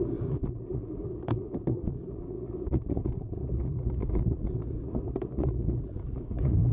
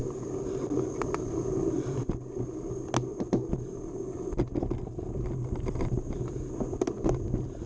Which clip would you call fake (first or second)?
first